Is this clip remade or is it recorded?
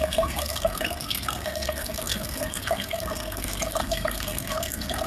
remade